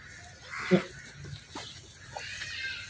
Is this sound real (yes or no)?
yes